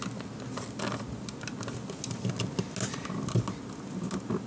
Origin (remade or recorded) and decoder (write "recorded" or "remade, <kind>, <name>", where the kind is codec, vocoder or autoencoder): recorded